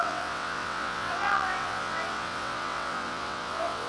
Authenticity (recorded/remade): remade